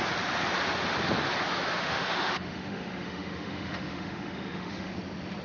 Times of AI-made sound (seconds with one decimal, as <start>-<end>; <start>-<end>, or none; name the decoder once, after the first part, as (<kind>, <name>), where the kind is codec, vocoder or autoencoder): 1.7-4.9 (autoencoder, DAC-VAE)